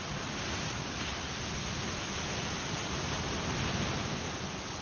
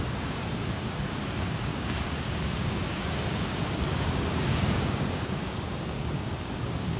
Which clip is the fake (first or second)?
second